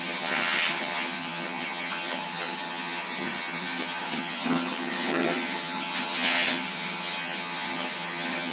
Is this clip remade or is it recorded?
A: remade